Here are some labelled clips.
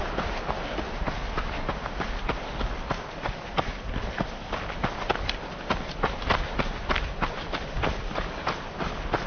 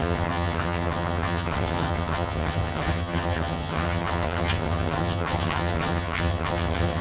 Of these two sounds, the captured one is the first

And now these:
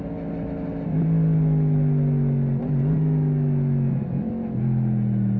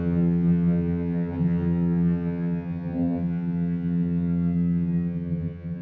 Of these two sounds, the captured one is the first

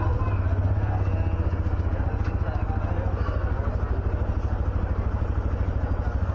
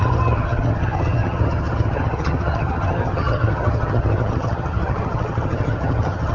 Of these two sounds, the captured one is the first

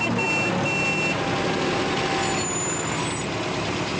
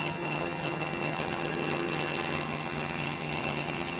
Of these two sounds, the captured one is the first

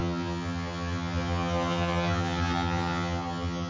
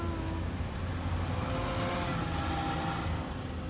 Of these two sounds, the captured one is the second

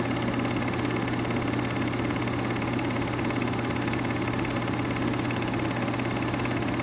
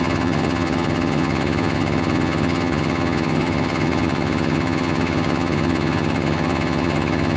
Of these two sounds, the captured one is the first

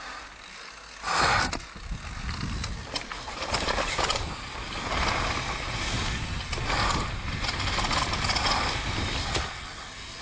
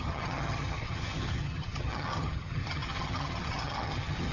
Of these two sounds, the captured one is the first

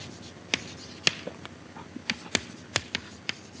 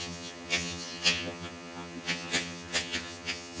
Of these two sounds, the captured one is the first